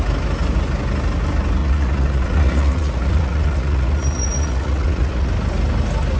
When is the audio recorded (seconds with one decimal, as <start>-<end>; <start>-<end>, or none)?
0.0-1.6; 5.3-6.2